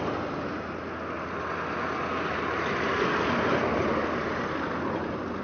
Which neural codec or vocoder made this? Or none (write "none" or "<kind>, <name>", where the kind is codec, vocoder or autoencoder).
none